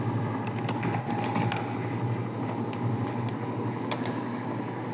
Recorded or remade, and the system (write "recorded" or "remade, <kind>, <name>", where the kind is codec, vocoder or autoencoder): recorded